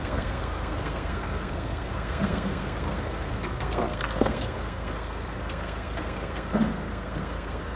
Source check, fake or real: fake